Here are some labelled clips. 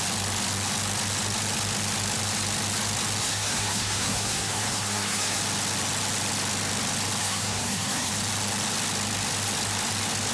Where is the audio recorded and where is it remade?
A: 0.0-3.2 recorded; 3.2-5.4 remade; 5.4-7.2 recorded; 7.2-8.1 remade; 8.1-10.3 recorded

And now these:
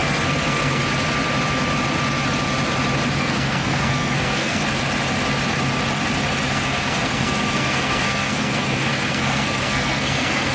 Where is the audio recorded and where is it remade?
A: 0.0-0.8 remade; 0.8-3.2 recorded; 3.2-4.6 remade; 4.6-6.5 recorded; 6.5-10.5 remade

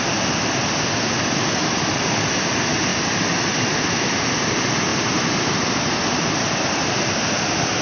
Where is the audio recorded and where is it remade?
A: 0.0-2.9 recorded; 2.9-3.7 remade; 3.7-7.8 recorded

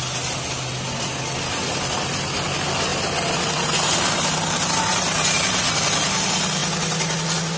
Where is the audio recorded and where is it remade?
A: 0.0-7.6 recorded